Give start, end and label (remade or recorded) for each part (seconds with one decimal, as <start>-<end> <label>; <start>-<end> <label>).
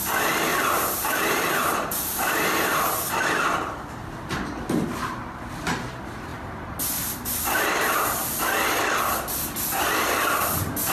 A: 0.0-0.5 recorded; 0.5-2.8 remade; 2.8-6.3 recorded; 6.3-8.0 remade; 8.0-10.9 recorded